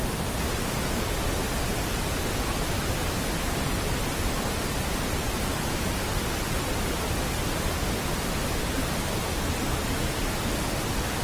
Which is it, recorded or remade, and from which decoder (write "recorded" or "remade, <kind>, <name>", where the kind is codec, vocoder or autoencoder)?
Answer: recorded